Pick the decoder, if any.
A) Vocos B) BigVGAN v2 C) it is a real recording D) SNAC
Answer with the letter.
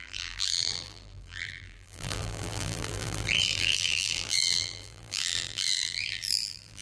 B